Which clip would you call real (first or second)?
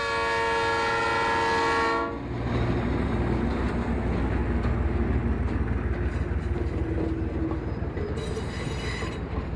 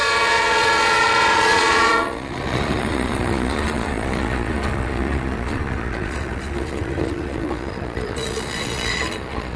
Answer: first